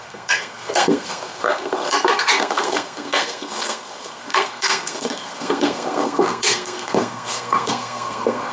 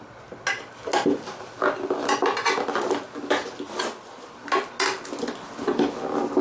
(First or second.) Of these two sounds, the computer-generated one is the first